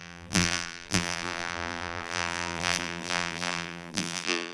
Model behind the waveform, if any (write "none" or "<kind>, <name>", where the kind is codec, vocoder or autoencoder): vocoder, BigVGAN v2